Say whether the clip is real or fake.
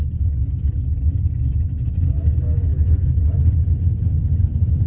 real